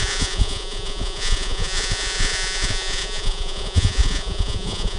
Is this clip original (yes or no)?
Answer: no